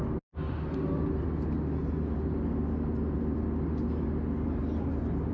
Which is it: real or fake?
real